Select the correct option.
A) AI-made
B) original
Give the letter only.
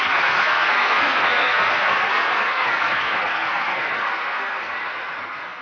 A